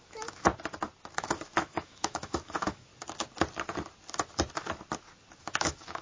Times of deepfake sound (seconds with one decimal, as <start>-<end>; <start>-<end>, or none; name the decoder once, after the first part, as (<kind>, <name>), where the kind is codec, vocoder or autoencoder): 0.0-0.5 (autoencoder, DAC-VAE); 1.2-2.9; 5.4-6.0